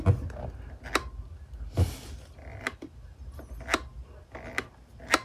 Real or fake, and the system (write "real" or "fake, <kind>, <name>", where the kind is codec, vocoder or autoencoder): real